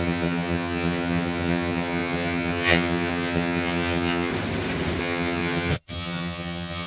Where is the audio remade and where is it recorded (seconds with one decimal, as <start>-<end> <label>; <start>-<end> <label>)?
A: 0.0-4.3 remade; 4.3-5.0 recorded; 5.0-6.9 remade